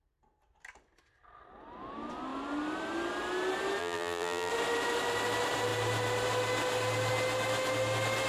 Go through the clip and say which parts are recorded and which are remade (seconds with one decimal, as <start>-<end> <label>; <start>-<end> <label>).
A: 0.0-3.8 recorded; 3.8-4.5 remade; 4.5-8.3 recorded